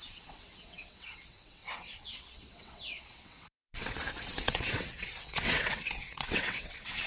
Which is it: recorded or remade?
remade